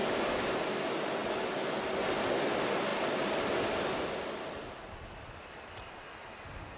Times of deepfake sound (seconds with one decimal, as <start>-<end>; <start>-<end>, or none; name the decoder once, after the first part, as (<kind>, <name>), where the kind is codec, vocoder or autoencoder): none